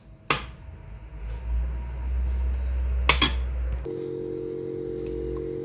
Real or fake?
real